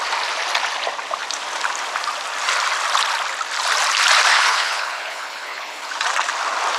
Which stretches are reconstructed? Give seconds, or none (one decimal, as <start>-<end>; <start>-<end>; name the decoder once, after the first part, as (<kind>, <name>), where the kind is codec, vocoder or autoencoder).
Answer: 4.3-5.9 (codec, HILCodec)